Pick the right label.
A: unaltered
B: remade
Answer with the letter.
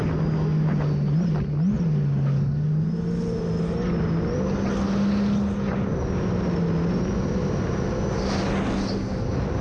A